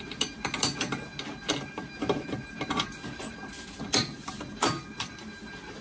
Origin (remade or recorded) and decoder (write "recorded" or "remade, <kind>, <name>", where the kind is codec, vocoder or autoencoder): recorded